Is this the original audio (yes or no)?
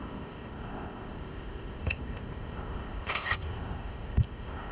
no